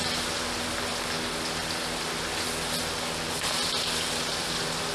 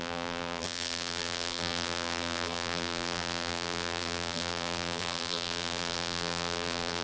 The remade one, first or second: second